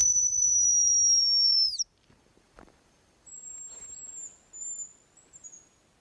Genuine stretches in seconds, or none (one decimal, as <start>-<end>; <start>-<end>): 3.5-6.0